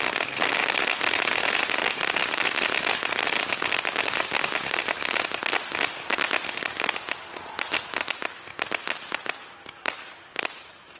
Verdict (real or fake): real